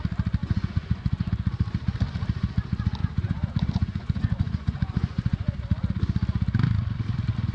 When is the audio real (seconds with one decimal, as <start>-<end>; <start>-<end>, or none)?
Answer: 0.0-0.4; 1.3-3.0; 5.6-7.5